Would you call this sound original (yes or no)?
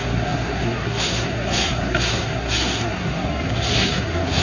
no